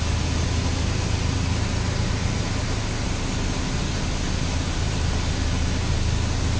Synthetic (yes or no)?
no